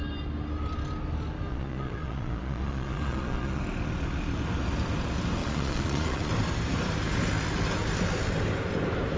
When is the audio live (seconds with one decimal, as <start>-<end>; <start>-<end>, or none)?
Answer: 0.0-1.5; 3.6-5.4; 6.3-9.2